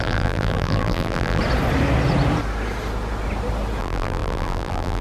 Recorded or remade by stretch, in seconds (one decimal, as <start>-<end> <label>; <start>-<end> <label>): 0.0-1.4 remade; 1.4-3.8 recorded; 3.8-5.0 remade